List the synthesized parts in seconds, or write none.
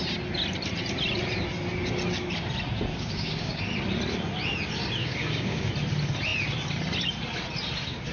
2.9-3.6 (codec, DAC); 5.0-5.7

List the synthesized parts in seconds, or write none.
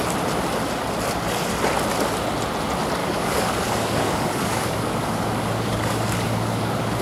3.0-7.0 (codec, DAC)